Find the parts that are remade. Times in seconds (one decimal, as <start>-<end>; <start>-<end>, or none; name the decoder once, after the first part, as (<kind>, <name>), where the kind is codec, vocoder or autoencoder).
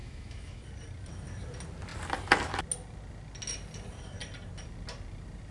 0.0-0.6 (autoencoder, DAC-VAE)